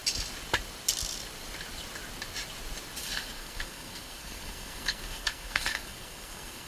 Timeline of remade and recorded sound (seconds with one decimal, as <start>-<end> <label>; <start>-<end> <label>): 0.0-3.0 recorded; 3.0-6.7 remade

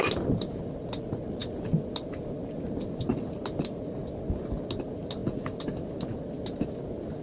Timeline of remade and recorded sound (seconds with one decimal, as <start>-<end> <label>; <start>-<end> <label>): 0.0-7.2 recorded

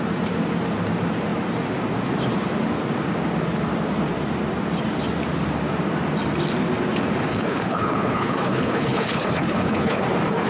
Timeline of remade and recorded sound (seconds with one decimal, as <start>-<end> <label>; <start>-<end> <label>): 0.0-7.3 recorded; 7.3-10.0 remade; 10.0-10.5 recorded

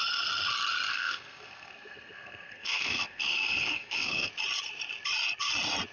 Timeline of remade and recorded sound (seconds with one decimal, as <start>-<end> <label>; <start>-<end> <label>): 0.0-0.9 recorded; 0.9-4.3 remade; 4.3-5.9 recorded

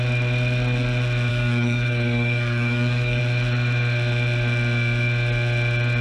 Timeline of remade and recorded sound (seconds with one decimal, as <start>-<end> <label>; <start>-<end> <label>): 0.0-1.3 recorded; 1.3-3.2 remade; 3.2-6.0 recorded

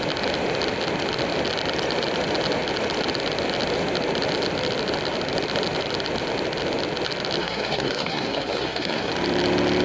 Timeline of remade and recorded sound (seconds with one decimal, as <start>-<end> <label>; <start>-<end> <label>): 0.0-7.4 recorded; 7.4-9.1 remade; 9.1-9.8 recorded

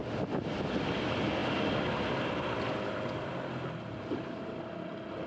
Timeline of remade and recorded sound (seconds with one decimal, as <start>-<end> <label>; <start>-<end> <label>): 0.0-5.3 recorded

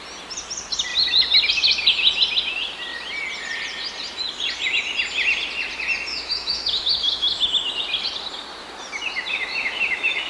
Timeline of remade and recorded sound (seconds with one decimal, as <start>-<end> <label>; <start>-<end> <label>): 0.0-6.1 recorded; 6.1-7.7 remade; 7.7-9.3 recorded; 9.3-10.3 remade